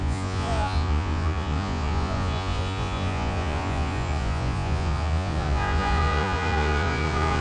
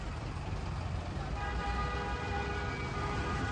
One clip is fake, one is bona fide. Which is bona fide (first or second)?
second